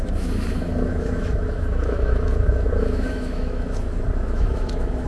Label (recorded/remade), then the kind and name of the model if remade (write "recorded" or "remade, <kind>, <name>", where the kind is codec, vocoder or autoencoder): remade, autoencoder, DAC-VAE